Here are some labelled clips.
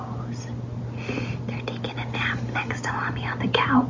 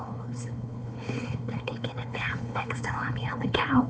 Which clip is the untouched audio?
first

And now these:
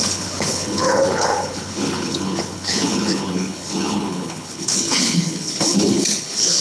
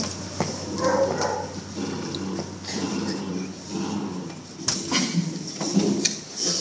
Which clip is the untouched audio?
second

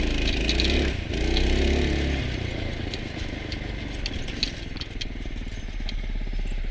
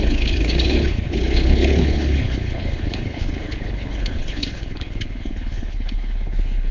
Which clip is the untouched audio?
first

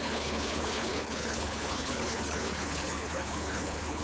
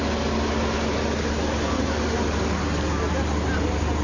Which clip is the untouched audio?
second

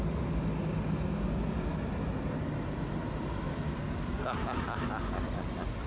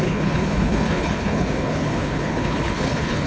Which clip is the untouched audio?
first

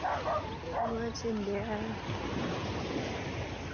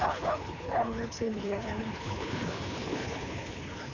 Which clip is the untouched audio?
first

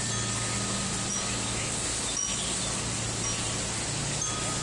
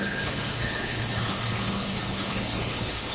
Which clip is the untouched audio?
first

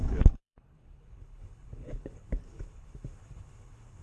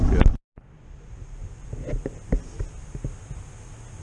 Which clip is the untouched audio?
second